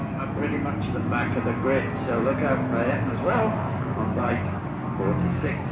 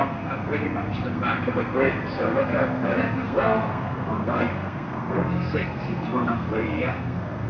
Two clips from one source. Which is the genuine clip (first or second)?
first